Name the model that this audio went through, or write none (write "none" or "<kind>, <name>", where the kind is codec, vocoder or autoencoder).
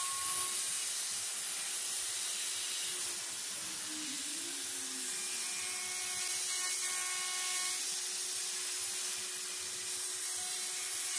none